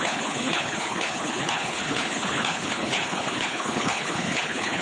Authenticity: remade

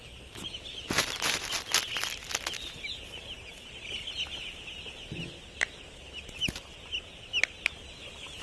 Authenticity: recorded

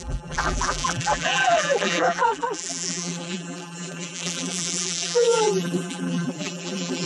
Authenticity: remade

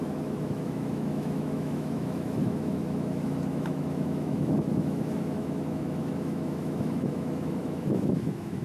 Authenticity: remade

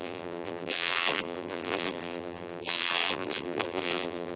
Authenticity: remade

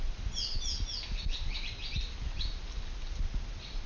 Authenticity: recorded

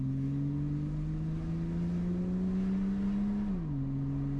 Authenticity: recorded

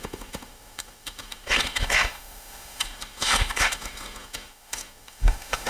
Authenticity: remade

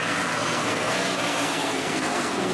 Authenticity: remade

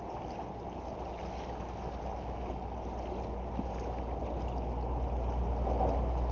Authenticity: recorded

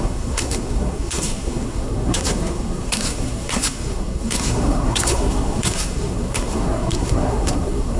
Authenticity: remade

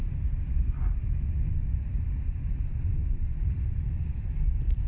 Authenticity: remade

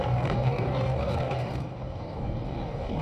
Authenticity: remade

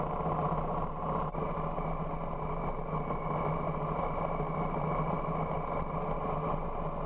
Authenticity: recorded